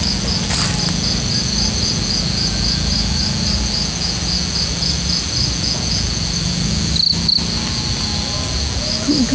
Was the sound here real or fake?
real